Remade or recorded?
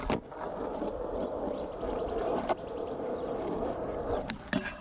recorded